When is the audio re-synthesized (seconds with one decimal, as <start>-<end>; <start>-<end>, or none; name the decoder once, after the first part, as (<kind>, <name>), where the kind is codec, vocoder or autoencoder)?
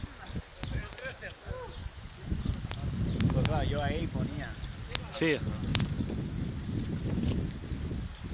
1.8-2.4 (vocoder, Vocos); 5.7-6.3